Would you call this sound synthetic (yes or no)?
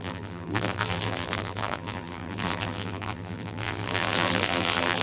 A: yes